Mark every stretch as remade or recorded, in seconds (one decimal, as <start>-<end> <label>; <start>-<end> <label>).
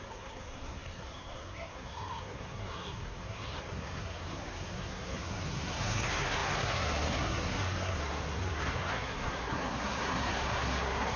0.0-11.2 remade